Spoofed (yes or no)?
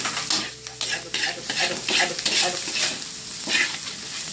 no